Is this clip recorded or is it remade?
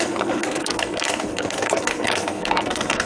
remade